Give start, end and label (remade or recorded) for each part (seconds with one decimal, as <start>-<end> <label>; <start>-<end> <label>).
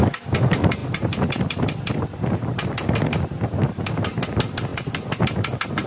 0.0-5.9 recorded